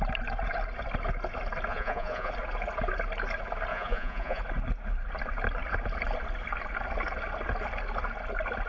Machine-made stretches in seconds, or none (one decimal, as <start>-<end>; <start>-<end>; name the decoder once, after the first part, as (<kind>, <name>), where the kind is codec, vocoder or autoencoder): 1.7-2.3 (vocoder, Vocos); 3.7-4.4